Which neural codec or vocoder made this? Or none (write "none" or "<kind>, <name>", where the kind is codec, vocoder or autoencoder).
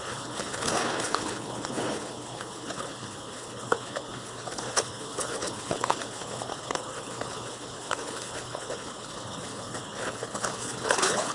codec, HILCodec